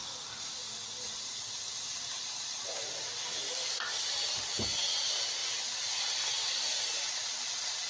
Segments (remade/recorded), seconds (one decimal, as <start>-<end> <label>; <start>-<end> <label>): 0.0-7.9 recorded